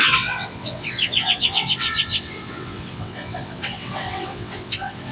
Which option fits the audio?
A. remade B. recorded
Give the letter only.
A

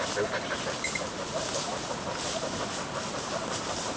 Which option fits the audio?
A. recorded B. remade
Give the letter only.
A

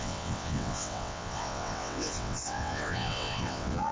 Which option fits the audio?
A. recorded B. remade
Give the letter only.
B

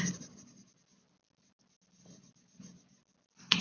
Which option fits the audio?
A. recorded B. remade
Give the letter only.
A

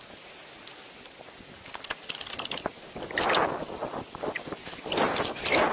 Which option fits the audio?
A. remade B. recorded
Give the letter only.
B